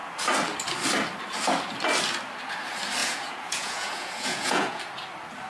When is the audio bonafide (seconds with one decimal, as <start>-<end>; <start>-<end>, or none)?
0.0-3.0; 4.8-5.5